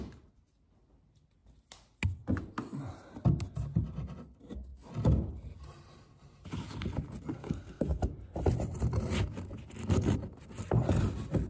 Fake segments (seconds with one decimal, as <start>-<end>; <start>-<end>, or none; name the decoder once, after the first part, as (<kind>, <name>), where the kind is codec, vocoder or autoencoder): 7.3-8.0 (codec, SNAC)